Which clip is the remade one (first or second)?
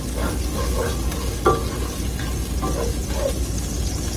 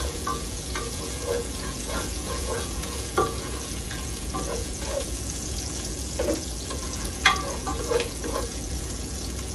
second